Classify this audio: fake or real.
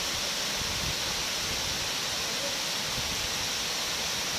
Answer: real